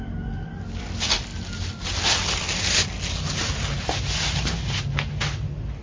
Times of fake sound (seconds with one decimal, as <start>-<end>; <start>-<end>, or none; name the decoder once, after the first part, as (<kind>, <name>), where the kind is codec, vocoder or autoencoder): none